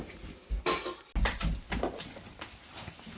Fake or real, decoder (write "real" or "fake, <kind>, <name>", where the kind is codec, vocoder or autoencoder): real